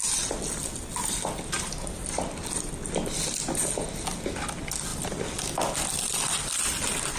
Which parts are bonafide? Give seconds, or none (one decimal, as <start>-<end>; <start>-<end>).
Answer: 0.0-2.0; 2.7-7.2